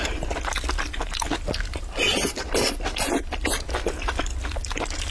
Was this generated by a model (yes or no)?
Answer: no